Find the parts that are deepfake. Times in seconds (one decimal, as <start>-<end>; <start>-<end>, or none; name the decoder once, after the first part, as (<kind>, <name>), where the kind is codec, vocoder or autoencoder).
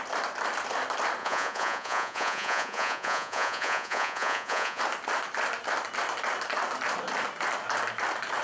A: 1.2-4.8 (vocoder, Vocos)